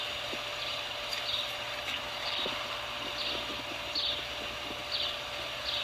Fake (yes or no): no